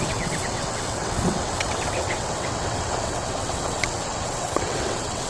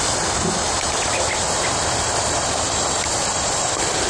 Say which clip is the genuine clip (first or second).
second